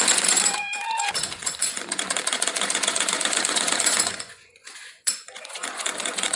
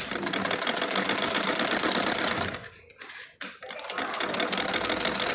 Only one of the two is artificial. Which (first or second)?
first